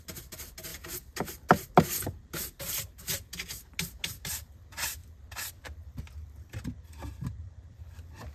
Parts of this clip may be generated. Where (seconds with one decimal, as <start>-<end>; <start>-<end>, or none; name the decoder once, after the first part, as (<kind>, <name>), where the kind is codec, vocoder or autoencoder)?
none